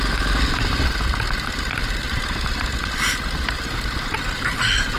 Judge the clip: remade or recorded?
recorded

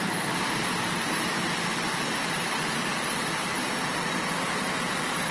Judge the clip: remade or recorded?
recorded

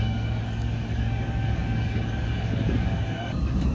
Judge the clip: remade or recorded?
remade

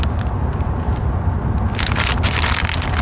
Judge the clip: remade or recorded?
recorded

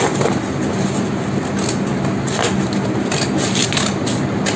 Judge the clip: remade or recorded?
recorded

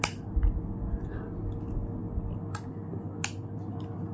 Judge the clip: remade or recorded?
recorded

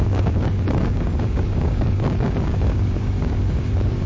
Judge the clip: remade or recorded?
remade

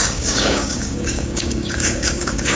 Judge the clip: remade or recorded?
remade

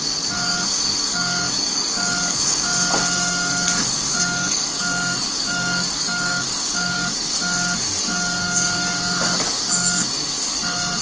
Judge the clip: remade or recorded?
remade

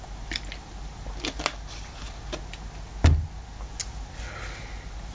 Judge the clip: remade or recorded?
recorded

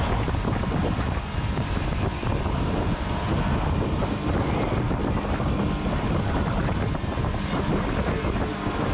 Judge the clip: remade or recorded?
recorded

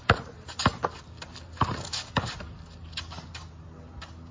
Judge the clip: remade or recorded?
recorded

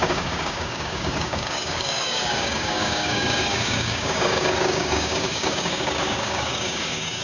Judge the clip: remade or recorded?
remade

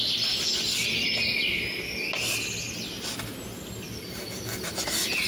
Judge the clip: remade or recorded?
recorded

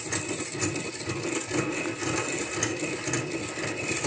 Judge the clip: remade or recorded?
recorded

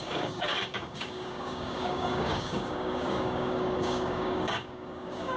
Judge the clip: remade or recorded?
remade